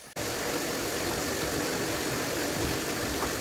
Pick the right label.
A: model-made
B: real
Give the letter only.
B